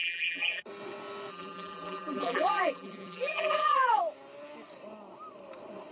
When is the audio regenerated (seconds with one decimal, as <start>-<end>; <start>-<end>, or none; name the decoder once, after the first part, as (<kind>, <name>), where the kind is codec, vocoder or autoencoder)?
0.0-0.6 (vocoder, BigVGAN v2); 1.3-4.0